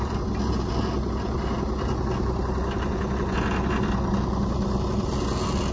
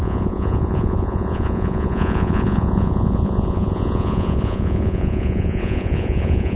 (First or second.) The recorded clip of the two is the first